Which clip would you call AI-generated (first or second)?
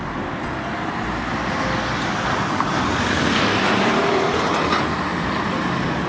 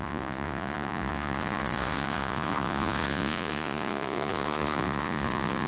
second